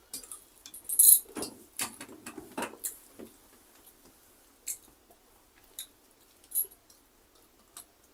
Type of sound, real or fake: real